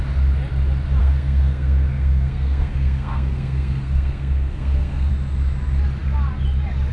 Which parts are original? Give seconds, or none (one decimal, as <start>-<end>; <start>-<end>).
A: 0.0-1.0; 5.1-6.9